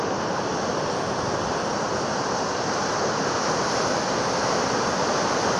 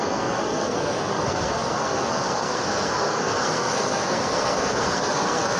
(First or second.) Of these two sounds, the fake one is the second